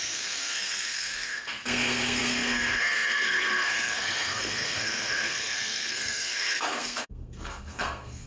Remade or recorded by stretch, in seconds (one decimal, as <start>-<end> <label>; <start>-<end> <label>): 0.0-8.3 remade